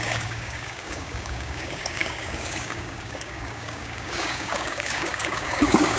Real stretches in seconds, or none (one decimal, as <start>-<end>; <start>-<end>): none